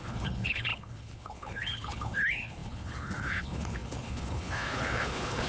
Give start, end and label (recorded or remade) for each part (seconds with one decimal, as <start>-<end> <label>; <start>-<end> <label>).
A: 0.0-5.5 remade